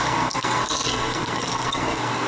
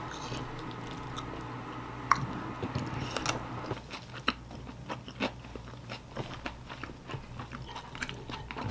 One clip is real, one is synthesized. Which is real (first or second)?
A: second